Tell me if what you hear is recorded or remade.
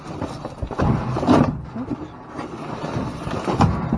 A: recorded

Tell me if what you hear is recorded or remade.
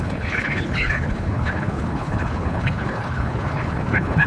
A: remade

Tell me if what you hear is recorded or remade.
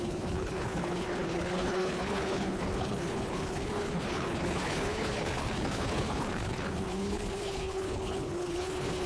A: remade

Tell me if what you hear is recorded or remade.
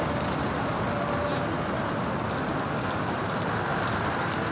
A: recorded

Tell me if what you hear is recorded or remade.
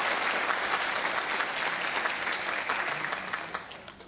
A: recorded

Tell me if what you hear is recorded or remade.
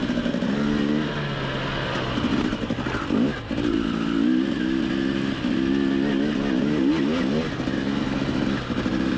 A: recorded